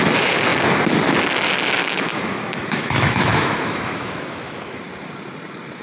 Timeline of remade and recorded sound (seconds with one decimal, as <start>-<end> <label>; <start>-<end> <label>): 0.0-1.8 recorded; 1.8-4.8 remade; 4.8-5.8 recorded